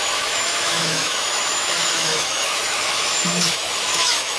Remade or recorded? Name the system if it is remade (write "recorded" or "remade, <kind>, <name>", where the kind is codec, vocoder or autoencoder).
remade, autoencoder, DAC-VAE